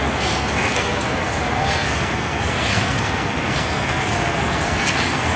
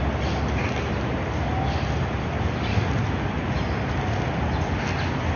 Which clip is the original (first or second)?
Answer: second